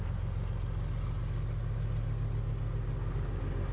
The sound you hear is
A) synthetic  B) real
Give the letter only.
B